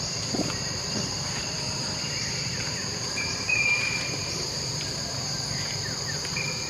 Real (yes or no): no